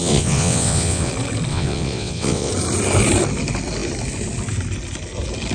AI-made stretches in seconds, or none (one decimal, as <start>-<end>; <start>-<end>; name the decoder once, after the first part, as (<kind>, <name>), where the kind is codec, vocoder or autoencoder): 0.0-1.1 (vocoder, WaveNeXt); 1.5-2.5